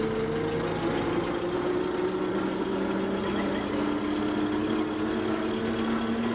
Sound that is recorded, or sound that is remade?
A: recorded